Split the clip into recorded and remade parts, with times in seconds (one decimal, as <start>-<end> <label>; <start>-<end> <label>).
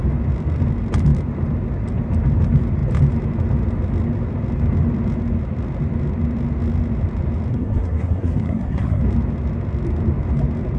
0.0-7.5 recorded; 7.5-9.0 remade; 9.0-10.8 recorded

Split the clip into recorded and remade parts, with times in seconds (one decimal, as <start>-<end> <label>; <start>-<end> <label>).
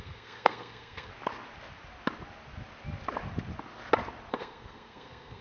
0.0-1.1 remade; 1.1-4.3 recorded; 4.3-5.4 remade